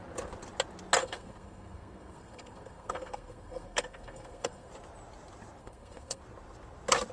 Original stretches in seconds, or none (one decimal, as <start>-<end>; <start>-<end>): 0.0-1.0; 4.7-5.6; 6.2-7.1